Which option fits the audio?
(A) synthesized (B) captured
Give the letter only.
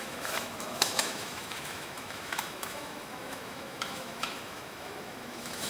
A